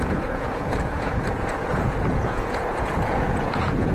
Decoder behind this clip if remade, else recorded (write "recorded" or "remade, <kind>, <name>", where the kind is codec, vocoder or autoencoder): remade, vocoder, Vocos